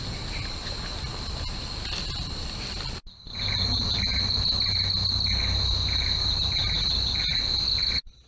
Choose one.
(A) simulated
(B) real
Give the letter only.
B